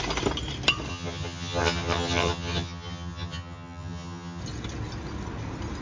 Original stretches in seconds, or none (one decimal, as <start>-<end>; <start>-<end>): 0.0-0.9; 4.4-5.8